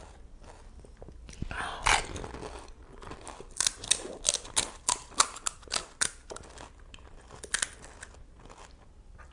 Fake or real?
real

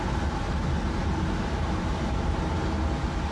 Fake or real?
real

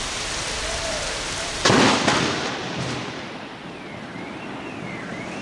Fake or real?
real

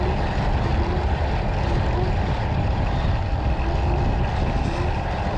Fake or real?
real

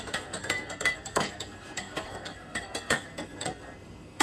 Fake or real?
fake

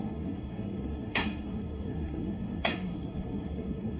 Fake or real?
fake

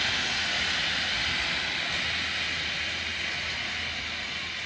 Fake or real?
real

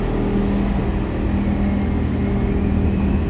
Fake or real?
real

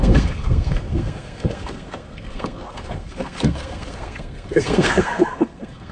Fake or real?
fake